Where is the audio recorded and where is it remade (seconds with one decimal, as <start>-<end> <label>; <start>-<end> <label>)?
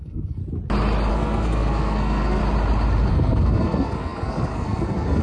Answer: 0.0-0.4 remade; 0.4-1.1 recorded; 1.1-2.4 remade; 2.4-3.1 recorded; 3.1-5.2 remade